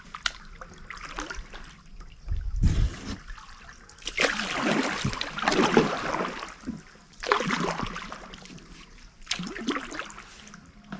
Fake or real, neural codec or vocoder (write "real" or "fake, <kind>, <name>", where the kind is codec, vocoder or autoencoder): real